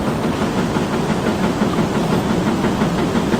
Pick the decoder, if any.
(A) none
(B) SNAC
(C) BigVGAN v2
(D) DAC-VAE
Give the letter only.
A